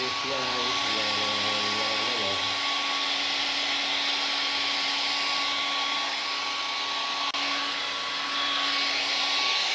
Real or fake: real